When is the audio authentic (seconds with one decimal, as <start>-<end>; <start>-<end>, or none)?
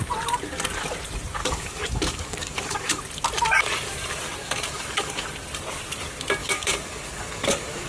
0.0-1.4; 3.0-4.4; 5.3-6.4